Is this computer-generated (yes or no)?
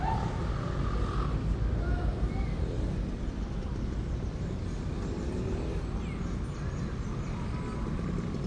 no